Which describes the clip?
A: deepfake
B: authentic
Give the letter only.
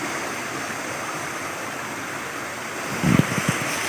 B